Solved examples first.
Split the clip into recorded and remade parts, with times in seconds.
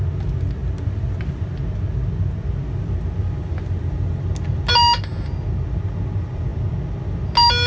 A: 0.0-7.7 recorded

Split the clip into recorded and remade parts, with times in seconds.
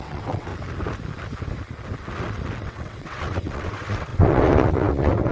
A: 0.0-0.5 remade; 0.5-2.6 recorded; 2.6-5.3 remade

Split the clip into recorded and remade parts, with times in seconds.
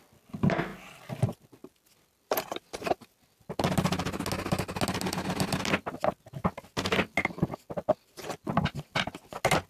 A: 0.0-0.7 recorded; 0.7-1.2 remade; 1.2-9.7 recorded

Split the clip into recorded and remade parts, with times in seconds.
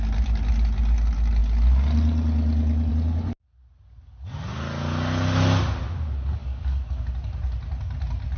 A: 0.0-6.4 recorded; 6.4-7.1 remade; 7.1-8.4 recorded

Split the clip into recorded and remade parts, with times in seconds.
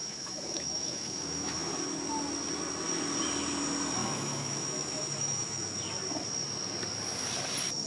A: 0.0-1.7 remade; 1.7-4.0 recorded; 4.0-5.8 remade; 5.8-7.9 recorded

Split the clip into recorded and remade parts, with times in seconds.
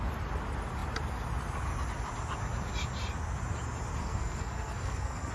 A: 0.0-4.0 recorded; 4.0-5.3 remade